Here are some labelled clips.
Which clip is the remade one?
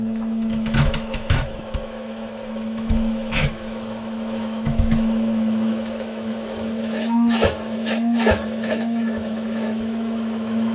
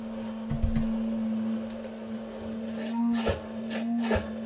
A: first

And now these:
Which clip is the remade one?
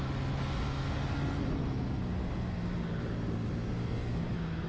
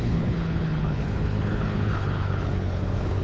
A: second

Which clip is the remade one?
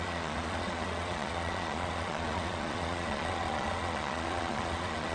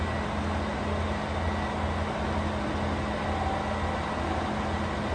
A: first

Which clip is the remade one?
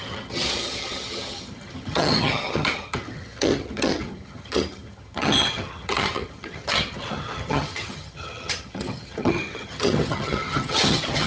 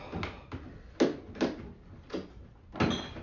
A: first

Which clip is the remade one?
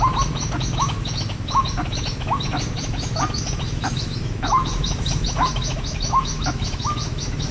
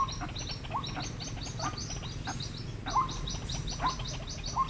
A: first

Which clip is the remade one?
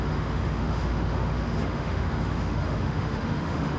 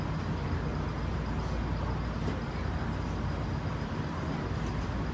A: first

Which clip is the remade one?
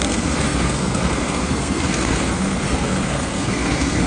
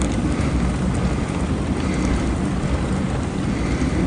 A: first